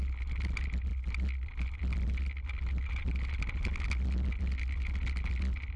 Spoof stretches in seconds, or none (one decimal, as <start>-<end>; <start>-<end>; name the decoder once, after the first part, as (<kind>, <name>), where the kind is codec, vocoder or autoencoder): none